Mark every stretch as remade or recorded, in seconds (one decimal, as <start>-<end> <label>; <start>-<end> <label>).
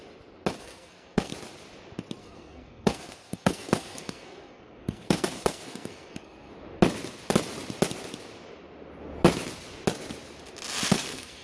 0.0-0.6 recorded; 0.6-1.3 remade; 1.3-2.2 recorded; 2.2-6.5 remade; 6.5-10.9 recorded; 10.9-11.4 remade